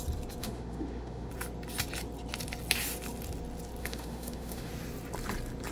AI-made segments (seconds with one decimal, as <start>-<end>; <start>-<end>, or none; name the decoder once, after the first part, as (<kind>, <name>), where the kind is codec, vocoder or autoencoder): 0.4-1.3 (autoencoder, DAC-VAE); 3.8-4.7